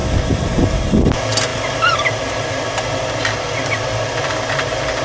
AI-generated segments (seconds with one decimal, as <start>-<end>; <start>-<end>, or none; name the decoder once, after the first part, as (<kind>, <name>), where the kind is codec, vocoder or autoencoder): none